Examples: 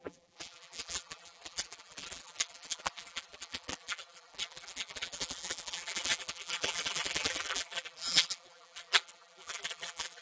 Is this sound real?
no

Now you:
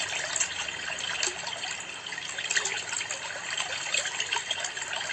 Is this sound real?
yes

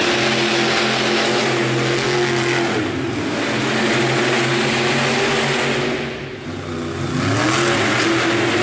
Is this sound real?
yes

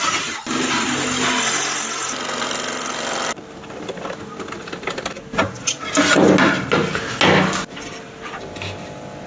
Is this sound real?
yes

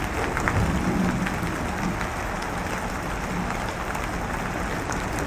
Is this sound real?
yes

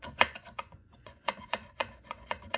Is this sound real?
no